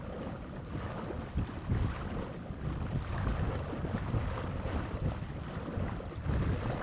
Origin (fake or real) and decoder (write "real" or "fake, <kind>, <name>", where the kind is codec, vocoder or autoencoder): real